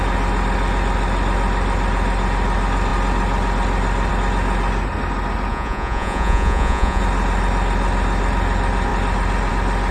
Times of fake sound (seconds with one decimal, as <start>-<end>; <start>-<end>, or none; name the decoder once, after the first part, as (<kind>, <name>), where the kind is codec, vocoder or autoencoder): 5.5-7.0 (vocoder, Vocos)